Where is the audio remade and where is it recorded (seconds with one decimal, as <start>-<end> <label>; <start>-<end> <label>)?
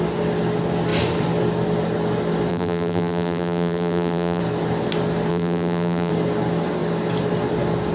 0.0-2.5 recorded; 2.5-4.4 remade; 4.4-5.3 recorded; 5.3-6.1 remade; 6.1-7.9 recorded